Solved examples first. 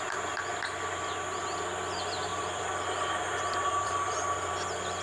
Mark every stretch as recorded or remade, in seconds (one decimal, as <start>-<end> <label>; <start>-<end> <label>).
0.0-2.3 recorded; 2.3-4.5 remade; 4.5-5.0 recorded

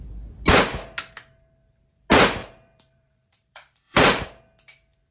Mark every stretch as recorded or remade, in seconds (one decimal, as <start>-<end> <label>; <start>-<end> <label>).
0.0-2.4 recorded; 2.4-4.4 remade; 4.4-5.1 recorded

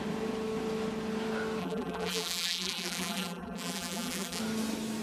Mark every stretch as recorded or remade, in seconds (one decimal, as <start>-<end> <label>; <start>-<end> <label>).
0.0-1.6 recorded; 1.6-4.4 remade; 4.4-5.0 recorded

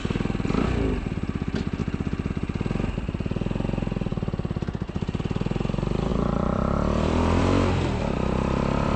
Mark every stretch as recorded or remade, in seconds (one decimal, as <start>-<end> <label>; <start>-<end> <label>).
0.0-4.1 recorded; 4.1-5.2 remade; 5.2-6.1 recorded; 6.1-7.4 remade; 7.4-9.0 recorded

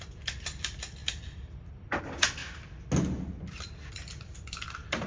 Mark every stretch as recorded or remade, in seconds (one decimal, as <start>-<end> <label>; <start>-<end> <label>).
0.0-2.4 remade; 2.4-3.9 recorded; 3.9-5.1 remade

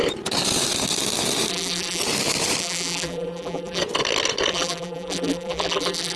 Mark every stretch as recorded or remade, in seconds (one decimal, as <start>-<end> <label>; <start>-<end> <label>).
0.0-1.5 recorded; 1.5-2.0 remade; 2.0-2.6 recorded; 2.6-3.8 remade; 3.8-4.5 recorded; 4.5-6.2 remade